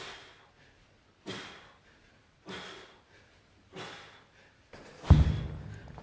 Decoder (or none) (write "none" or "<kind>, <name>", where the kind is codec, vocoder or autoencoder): none